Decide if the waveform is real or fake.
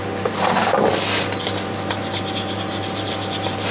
real